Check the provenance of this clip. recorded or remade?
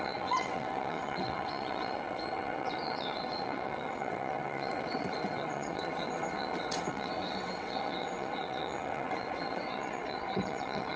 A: remade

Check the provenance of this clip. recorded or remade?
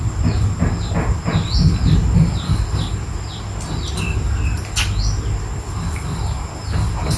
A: recorded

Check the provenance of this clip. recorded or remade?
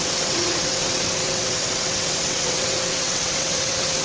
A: remade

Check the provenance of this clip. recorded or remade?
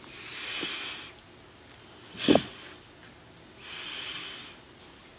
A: recorded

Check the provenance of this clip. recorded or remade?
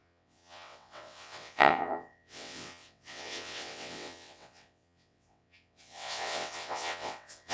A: remade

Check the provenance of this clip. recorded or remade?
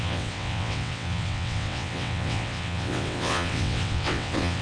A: remade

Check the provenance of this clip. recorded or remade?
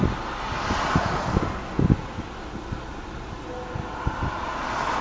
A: recorded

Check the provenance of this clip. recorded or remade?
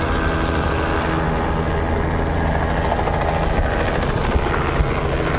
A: recorded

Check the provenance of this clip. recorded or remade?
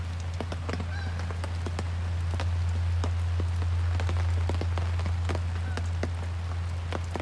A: recorded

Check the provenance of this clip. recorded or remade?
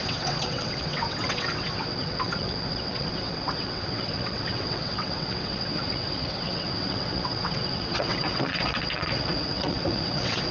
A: remade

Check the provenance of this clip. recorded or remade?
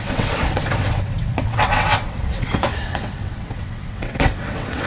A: remade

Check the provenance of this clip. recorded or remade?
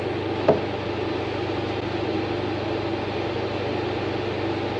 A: recorded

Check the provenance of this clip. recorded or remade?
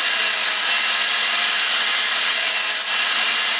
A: recorded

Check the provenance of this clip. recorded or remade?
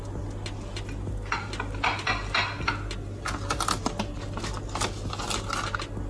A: recorded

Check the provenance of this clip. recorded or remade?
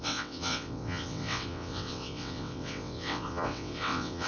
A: remade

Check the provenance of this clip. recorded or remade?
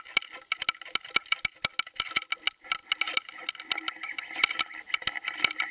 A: recorded